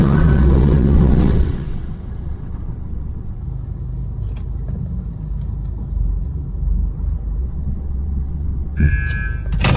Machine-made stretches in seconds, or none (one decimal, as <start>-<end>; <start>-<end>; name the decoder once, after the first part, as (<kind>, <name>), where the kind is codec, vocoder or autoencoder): 0.0-3.4 (vocoder, WaveNeXt); 7.4-8.9